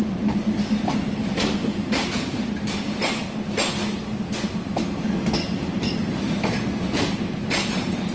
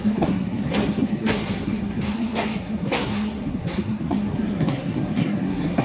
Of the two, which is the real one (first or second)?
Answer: first